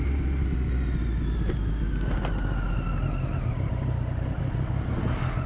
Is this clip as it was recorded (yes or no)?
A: yes